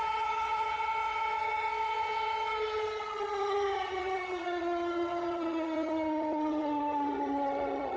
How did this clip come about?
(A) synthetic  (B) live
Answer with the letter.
A